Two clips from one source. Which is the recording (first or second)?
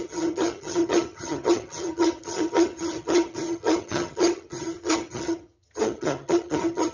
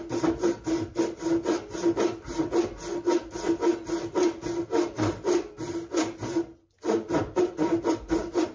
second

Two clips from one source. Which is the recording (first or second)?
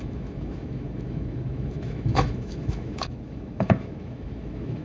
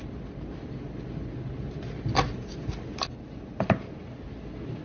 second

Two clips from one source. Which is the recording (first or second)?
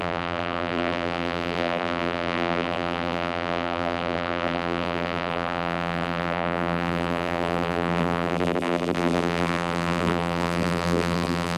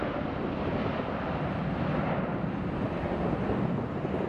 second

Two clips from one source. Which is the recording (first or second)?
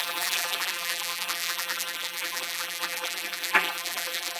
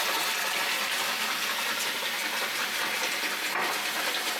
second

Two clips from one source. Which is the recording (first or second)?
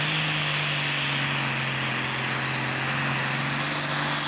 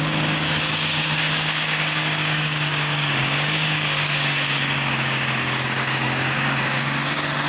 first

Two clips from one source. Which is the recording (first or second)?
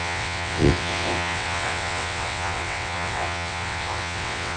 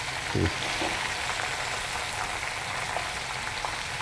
second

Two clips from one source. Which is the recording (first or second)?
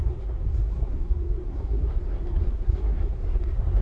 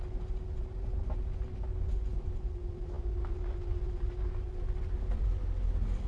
second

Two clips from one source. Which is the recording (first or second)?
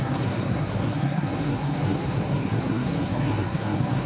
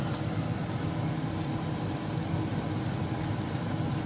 second